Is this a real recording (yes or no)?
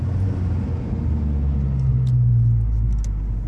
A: yes